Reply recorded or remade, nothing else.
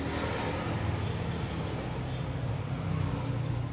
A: recorded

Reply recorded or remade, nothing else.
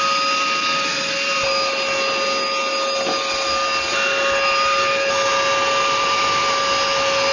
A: recorded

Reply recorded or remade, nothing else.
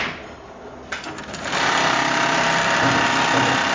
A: recorded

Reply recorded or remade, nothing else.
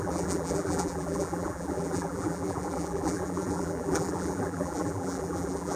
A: remade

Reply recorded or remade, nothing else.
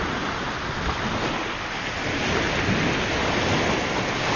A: recorded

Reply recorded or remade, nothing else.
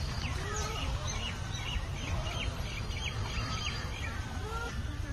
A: remade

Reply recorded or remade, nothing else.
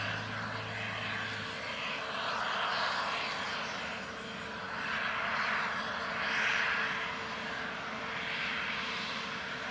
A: recorded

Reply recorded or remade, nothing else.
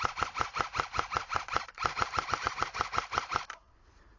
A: remade